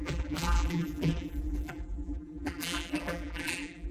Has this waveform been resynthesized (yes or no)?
yes